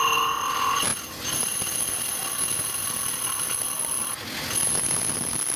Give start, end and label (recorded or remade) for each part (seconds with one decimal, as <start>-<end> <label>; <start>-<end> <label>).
0.0-5.6 recorded